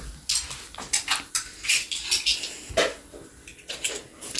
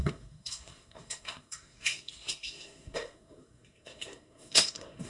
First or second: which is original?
first